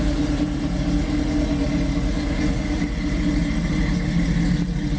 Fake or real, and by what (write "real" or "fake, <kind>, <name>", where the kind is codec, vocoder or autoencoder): real